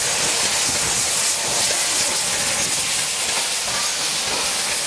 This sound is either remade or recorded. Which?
recorded